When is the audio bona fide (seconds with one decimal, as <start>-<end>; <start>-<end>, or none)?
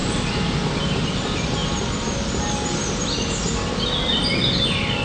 0.0-5.0